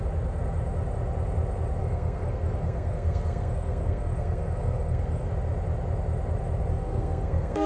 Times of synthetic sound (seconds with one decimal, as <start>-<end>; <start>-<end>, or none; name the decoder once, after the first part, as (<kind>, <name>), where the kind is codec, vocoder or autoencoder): 1.8-5.3 (codec, SNAC); 6.7-7.7